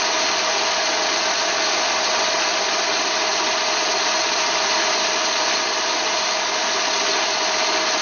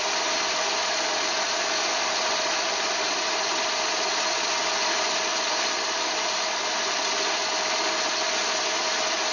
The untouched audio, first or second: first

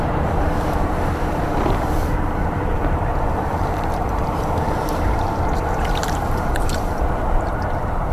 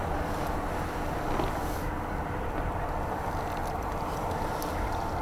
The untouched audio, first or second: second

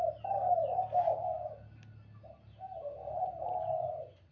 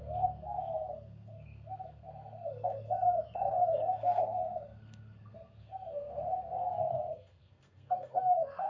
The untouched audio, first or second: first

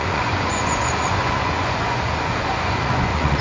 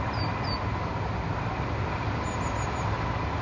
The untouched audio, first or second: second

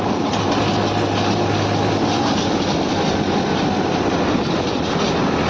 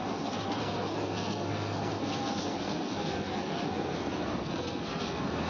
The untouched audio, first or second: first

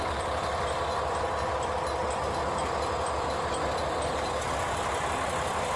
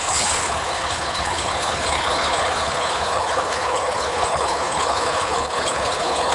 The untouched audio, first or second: first